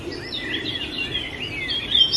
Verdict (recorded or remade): recorded